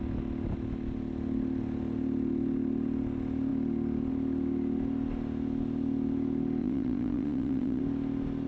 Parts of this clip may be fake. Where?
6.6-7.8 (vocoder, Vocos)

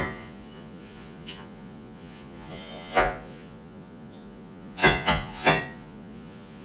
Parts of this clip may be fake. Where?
0.0-6.6 (vocoder, Vocos)